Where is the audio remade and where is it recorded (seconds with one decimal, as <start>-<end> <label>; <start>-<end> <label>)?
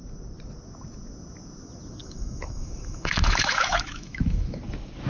0.0-2.0 recorded; 2.0-4.6 remade; 4.6-5.1 recorded